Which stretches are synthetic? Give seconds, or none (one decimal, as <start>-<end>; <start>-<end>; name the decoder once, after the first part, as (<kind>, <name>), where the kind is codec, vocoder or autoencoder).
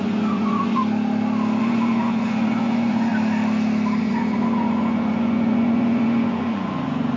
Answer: 0.0-0.8 (vocoder, Vocos); 1.6-3.1; 4.0-7.2